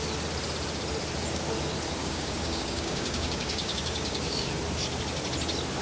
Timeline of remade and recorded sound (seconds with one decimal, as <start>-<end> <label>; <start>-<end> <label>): 0.0-2.0 recorded; 2.0-4.5 remade; 4.5-5.8 recorded